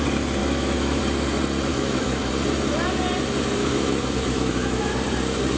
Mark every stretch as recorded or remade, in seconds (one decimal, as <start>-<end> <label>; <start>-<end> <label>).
0.0-0.4 recorded; 0.4-1.0 remade; 1.0-1.7 recorded; 1.7-2.3 remade; 2.3-3.6 recorded; 3.6-4.9 remade; 4.9-5.6 recorded